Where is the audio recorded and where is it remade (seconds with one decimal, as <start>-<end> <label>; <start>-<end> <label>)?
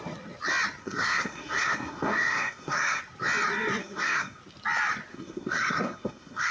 0.0-0.8 recorded; 0.8-3.0 remade; 3.0-3.8 recorded; 3.8-4.4 remade; 4.4-5.1 recorded; 5.1-6.5 remade